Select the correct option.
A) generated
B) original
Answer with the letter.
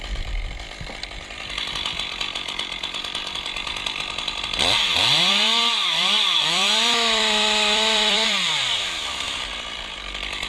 A